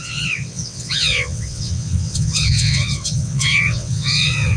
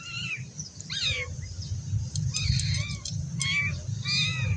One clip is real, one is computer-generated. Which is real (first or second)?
second